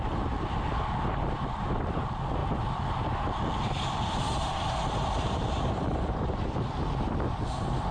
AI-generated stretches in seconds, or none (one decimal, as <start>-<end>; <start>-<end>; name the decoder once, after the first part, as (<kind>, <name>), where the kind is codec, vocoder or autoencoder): 2.4-7.1 (vocoder, BigVGAN v2)